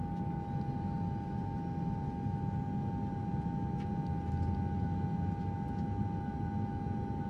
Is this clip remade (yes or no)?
no